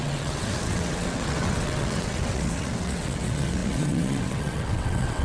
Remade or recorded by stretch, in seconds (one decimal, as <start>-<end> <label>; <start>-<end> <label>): 0.0-5.2 remade